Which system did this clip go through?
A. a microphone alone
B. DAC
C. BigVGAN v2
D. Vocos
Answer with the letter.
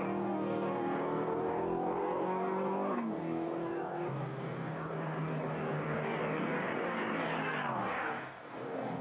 B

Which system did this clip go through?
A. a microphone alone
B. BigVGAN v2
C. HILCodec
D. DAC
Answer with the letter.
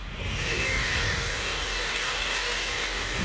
D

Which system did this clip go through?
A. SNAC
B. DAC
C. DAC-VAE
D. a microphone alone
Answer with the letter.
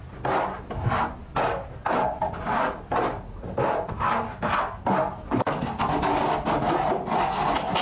D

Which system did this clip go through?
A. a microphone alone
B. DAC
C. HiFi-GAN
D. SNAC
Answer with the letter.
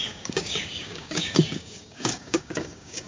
B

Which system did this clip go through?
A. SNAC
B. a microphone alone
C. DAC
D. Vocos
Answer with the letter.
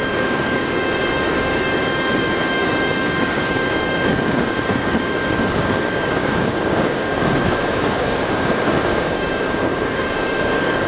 C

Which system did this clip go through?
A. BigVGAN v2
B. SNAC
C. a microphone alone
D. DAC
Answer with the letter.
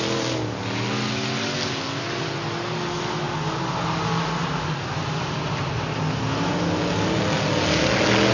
C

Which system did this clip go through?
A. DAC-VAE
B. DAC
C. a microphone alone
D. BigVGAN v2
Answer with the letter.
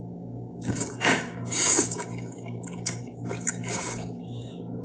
B